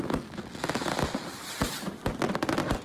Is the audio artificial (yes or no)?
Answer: no